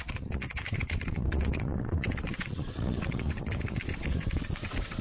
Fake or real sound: fake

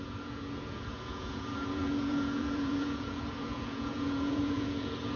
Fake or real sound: fake